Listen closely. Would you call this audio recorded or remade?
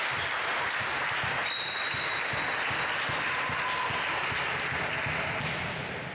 recorded